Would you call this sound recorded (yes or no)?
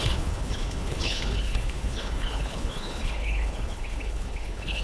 no